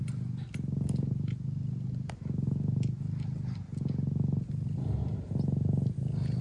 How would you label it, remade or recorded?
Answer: recorded